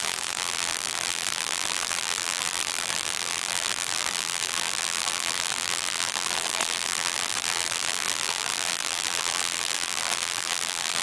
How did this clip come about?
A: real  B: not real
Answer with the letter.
B